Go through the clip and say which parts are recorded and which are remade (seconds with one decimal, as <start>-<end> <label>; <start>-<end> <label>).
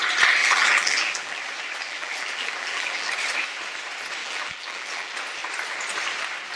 0.0-0.4 recorded; 0.4-1.4 remade; 1.4-1.8 recorded; 1.8-3.1 remade; 3.1-4.2 recorded; 4.2-5.1 remade; 5.1-6.6 recorded